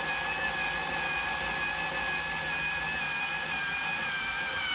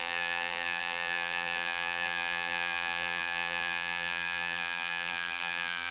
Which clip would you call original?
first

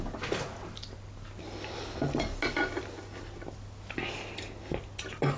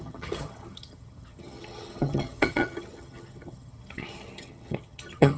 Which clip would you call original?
first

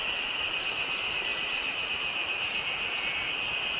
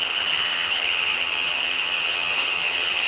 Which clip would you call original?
first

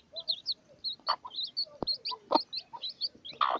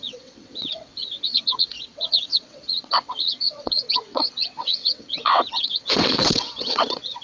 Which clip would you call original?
first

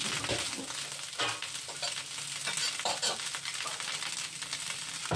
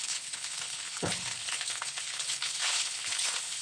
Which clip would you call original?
first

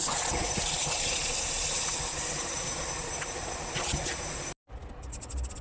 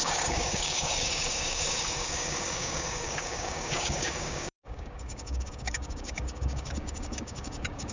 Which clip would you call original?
first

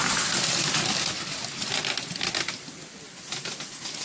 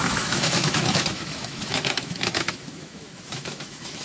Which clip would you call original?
first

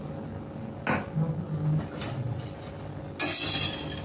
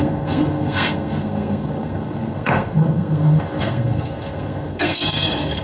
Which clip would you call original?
first